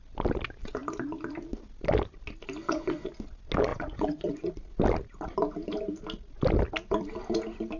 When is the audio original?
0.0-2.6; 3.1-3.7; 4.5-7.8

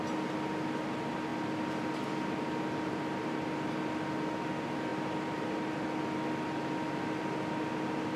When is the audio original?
0.0-8.2

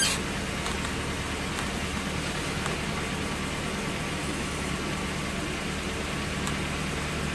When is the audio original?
0.0-4.2; 4.7-7.3

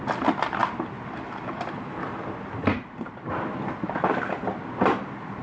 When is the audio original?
0.0-2.7; 3.3-5.4

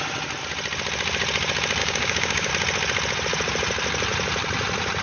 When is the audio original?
0.0-1.8; 2.5-5.0

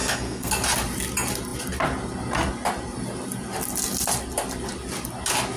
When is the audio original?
0.5-5.6